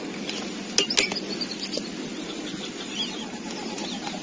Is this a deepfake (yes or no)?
no